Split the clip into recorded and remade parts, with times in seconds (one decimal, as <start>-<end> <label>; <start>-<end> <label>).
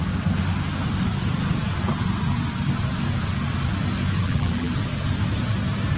0.0-4.2 recorded; 4.2-4.7 remade; 4.7-6.0 recorded